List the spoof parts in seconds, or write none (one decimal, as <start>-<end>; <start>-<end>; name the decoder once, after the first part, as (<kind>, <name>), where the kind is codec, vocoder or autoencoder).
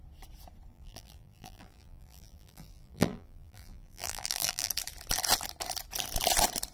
0.7-4.7 (vocoder, BigVGAN v2)